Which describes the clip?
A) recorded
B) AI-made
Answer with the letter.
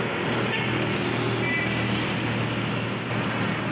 A